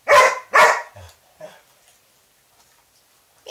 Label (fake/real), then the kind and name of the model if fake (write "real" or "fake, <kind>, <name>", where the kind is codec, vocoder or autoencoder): real